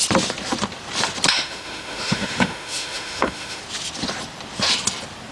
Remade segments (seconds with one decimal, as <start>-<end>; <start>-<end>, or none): 1.3-3.6